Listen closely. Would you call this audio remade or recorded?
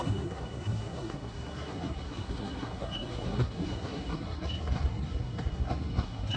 remade